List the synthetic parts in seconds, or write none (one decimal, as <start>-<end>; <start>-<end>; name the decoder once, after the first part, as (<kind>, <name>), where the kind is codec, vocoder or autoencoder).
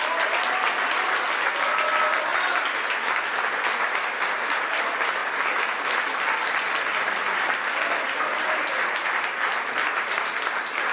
none